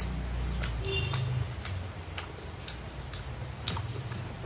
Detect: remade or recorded recorded